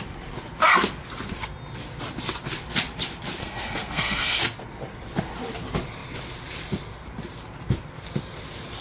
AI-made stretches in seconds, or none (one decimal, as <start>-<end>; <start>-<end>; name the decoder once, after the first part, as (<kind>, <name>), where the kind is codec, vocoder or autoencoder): 3.4-4.4 (codec, SNAC)